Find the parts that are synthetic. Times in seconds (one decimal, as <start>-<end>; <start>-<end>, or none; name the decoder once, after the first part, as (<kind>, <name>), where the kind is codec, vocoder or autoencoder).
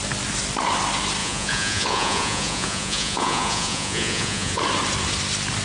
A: 1.2-4.6 (vocoder, Vocos)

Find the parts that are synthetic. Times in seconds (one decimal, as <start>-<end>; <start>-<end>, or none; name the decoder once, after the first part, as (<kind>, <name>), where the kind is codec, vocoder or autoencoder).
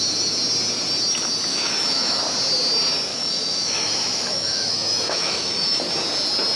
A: 1.5-2.2 (autoencoder, DAC-VAE); 3.1-5.8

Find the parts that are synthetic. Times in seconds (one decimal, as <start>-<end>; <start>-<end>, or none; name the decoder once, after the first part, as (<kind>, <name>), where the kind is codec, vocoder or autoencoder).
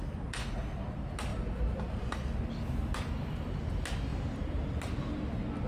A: 1.3-2.4 (vocoder, BigVGAN v2); 4.1-4.7